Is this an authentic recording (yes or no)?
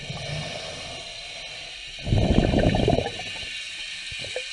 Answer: yes